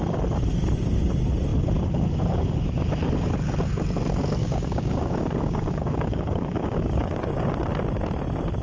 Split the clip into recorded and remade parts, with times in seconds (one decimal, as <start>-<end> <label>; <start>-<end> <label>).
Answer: 0.0-4.4 recorded; 4.4-7.5 remade; 7.5-8.6 recorded